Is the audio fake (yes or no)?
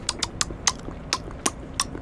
no